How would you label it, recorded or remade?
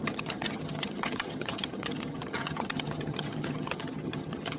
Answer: remade